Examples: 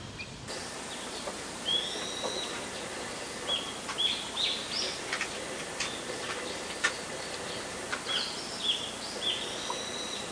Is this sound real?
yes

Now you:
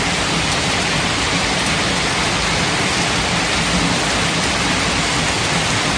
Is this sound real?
yes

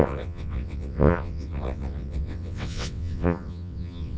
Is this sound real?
no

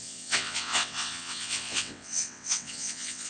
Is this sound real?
no